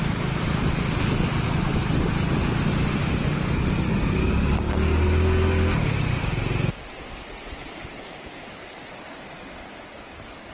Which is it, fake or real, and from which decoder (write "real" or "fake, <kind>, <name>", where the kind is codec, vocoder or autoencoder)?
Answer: real